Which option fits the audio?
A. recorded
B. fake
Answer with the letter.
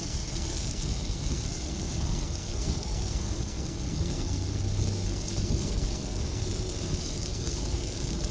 B